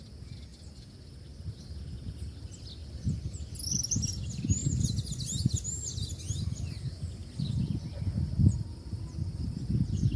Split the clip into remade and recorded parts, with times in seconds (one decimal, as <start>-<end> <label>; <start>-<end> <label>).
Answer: 0.0-2.8 recorded; 2.8-3.7 remade; 3.7-7.2 recorded; 7.2-8.6 remade; 8.6-10.2 recorded